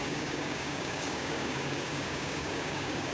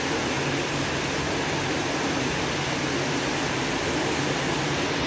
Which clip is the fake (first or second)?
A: first